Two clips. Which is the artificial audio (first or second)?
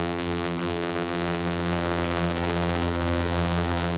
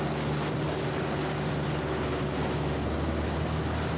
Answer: first